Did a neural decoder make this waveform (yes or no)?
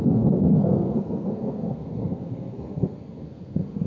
yes